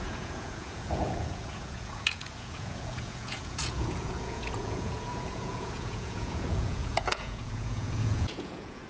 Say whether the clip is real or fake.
fake